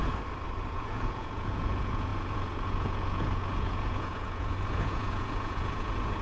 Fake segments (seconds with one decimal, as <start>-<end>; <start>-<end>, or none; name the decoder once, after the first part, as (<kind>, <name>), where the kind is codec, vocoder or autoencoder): 0.7-6.2 (vocoder, Vocos)